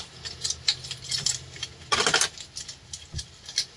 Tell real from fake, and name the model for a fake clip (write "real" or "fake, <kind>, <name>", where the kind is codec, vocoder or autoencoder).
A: real